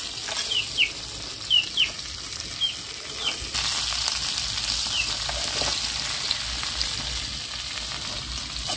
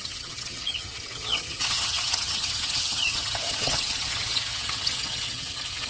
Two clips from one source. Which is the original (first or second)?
first